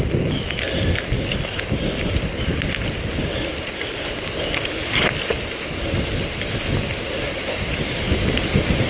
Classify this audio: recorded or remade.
recorded